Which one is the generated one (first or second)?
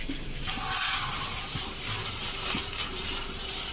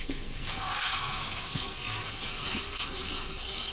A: second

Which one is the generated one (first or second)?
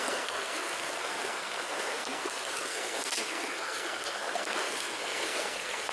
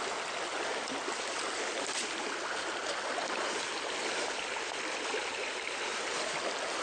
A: first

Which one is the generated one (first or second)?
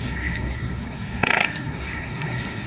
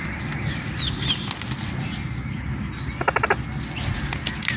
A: first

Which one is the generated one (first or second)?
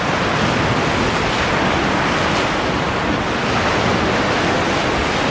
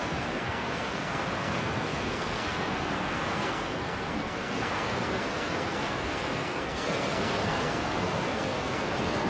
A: second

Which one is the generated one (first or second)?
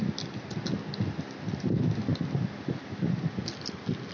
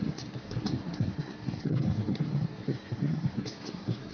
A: second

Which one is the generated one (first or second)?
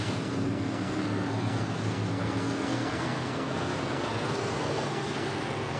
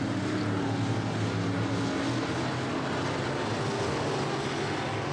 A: first